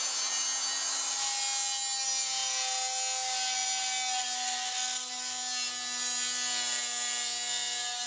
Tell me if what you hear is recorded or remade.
recorded